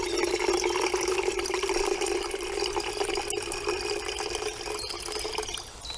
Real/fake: real